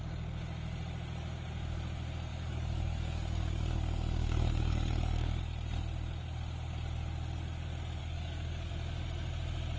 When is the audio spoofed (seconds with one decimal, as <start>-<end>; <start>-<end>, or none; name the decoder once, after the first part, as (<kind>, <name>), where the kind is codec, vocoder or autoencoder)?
2.3-5.4 (codec, DAC); 8.0-8.7